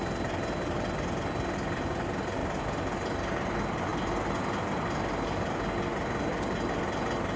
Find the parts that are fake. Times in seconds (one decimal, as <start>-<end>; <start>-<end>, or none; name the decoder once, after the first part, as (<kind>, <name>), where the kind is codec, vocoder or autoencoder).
2.4-2.9 (vocoder, BigVGAN v2)